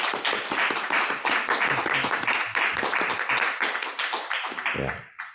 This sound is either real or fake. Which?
real